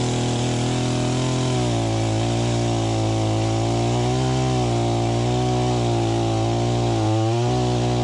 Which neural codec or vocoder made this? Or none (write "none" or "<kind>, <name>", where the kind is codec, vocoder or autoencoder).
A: none